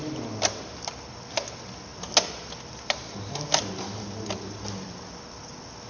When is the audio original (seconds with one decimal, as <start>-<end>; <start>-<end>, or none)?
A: 0.0-5.9